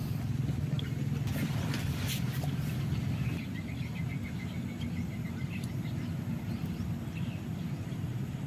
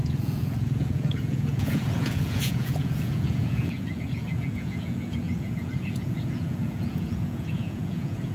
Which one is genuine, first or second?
first